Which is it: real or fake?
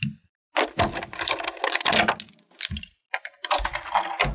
real